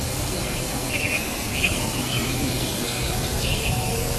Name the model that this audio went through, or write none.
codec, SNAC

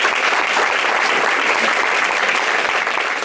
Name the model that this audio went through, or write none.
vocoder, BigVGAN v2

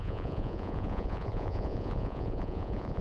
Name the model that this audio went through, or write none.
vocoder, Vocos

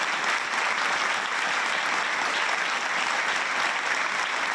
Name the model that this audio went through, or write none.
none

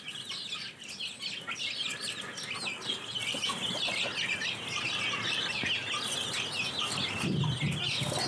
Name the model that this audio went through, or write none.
none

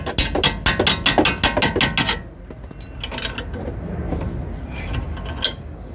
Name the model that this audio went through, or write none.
none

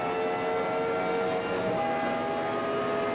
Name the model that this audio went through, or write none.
none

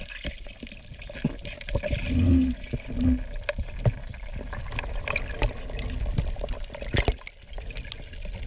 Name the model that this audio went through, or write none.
none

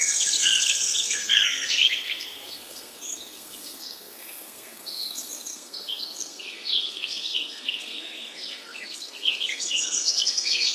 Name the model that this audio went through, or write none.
codec, SNAC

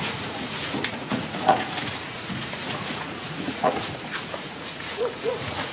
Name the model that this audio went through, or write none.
vocoder, Vocos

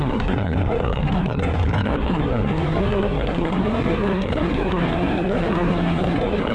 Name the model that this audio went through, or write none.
codec, SNAC